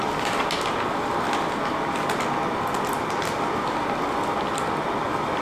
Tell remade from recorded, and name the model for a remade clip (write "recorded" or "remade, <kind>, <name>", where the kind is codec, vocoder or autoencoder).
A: recorded